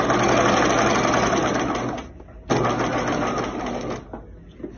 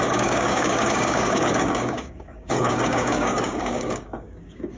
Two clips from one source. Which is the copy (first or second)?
second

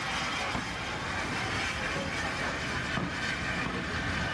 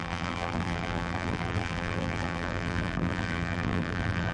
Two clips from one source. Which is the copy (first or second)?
second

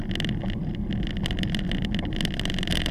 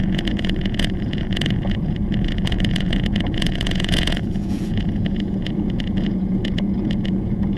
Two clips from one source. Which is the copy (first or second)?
second